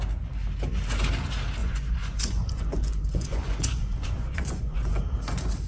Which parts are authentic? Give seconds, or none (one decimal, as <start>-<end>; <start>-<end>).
0.0-1.6; 5.0-5.7